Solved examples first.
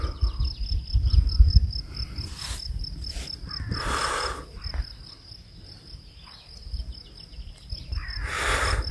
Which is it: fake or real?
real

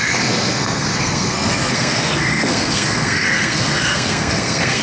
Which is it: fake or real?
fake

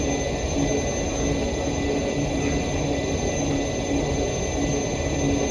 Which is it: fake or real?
real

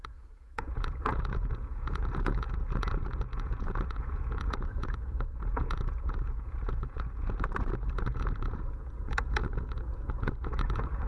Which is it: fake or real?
fake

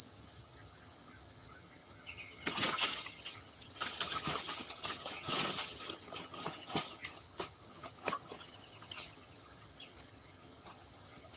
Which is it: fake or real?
fake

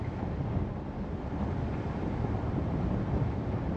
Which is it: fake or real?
real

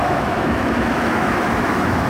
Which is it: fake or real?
fake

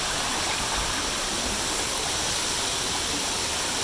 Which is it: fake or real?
real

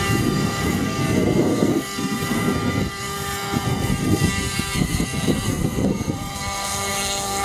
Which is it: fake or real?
fake